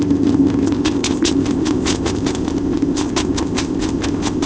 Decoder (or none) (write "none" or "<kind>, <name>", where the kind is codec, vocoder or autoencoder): codec, ZipCodec